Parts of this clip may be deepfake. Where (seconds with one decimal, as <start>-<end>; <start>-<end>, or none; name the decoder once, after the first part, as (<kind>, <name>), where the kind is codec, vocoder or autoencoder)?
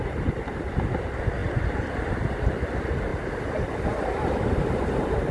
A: none